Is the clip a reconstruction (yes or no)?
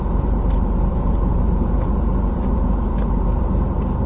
yes